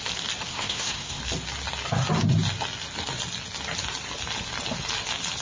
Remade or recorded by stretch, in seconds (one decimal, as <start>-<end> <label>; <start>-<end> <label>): 0.0-0.5 recorded; 0.5-1.2 remade; 1.2-5.4 recorded